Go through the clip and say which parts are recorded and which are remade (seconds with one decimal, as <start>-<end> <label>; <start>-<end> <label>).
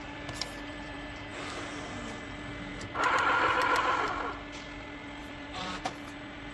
0.0-1.3 remade; 1.3-5.2 recorded; 5.2-6.5 remade